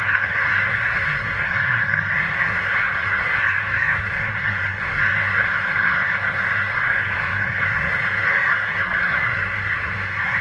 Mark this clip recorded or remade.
remade